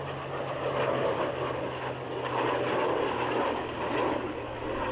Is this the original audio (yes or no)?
yes